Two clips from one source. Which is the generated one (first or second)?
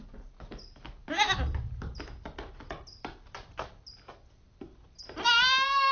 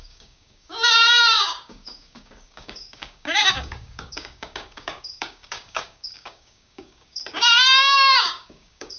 second